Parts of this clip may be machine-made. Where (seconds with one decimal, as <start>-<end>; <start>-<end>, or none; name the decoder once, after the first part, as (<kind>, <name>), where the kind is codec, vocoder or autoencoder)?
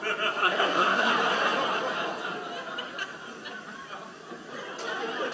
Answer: 0.4-1.1 (codec, SNAC)